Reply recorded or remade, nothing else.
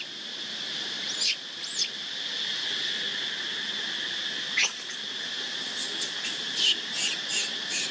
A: recorded